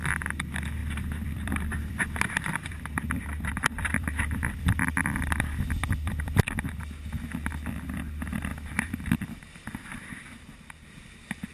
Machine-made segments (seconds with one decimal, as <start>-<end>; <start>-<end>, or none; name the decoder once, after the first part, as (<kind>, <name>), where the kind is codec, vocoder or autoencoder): 0.8-2.8 (vocoder, BigVGAN v2); 3.2-6.7; 8.5-10.4